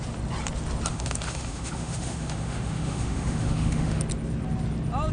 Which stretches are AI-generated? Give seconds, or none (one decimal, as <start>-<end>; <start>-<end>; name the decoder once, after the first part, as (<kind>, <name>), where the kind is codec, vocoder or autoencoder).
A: 0.9-4.0 (autoencoder, DAC-VAE)